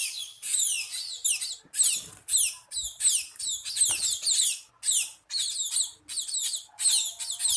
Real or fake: real